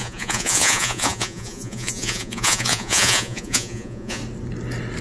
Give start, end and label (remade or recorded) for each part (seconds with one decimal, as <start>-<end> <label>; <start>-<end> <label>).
0.0-4.2 remade; 4.2-5.0 recorded